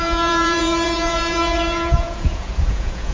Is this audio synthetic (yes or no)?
yes